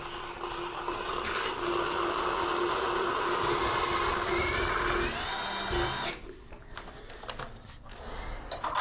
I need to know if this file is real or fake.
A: real